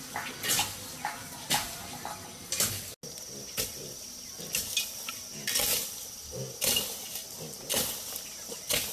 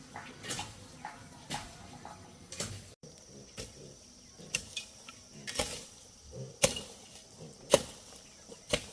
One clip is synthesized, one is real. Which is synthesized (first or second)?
second